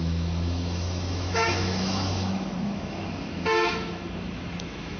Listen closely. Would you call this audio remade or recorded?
remade